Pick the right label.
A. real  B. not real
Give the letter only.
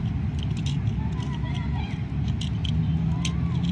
A